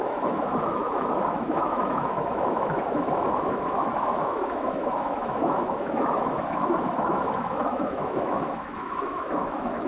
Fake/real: fake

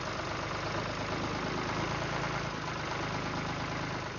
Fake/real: real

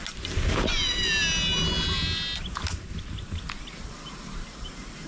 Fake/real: real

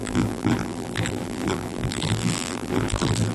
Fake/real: fake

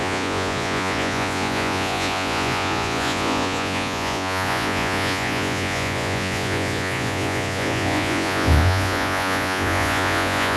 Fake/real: fake